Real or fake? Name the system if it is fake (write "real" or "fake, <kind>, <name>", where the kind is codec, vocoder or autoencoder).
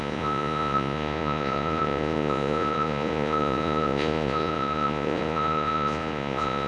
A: fake, vocoder, Vocos